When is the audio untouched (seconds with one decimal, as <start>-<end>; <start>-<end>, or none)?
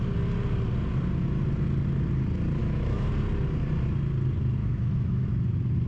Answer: 0.0-2.6; 3.1-4.6; 5.3-5.9